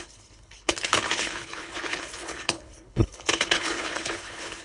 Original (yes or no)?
no